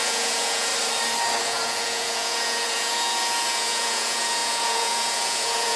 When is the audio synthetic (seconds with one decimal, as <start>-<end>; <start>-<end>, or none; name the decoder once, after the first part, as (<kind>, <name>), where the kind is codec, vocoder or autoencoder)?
0.0-0.7 (vocoder, Vocos); 1.4-5.8